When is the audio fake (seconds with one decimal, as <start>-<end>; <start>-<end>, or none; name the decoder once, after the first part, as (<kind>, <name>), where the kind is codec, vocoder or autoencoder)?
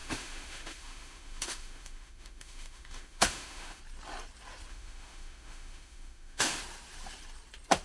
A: 0.0-3.8 (autoencoder, DAC-VAE); 4.7-6.6